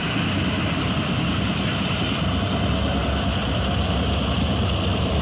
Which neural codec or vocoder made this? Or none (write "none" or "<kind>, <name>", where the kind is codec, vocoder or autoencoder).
none